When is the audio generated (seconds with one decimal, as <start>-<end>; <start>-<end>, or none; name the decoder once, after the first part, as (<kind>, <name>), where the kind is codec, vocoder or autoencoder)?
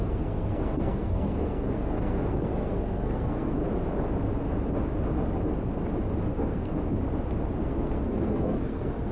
0.0-3.6 (codec, SNAC); 6.3-6.7; 7.6-9.1